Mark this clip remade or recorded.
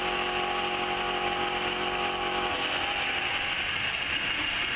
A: recorded